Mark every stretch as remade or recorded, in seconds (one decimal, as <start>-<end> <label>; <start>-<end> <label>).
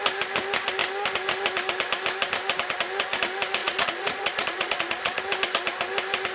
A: 0.0-3.6 recorded; 3.6-5.2 remade; 5.2-6.3 recorded